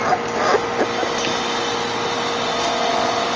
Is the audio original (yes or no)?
yes